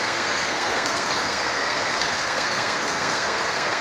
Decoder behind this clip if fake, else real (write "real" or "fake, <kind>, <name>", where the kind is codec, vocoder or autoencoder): fake, codec, SNAC